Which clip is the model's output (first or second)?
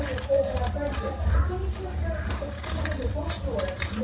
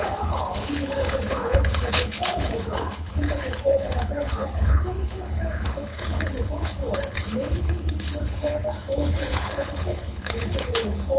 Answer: second